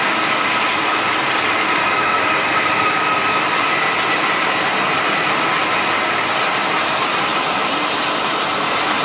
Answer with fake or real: real